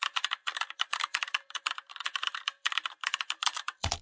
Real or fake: fake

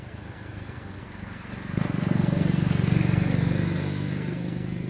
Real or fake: fake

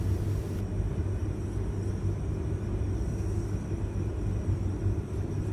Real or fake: real